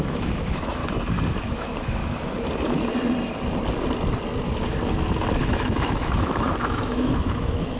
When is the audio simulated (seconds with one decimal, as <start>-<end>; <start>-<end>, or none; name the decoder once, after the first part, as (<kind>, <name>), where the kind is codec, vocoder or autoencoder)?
0.0-0.8 (autoencoder, DAC-VAE); 1.3-2.0; 5.4-7.8